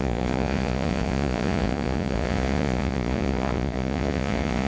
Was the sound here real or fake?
fake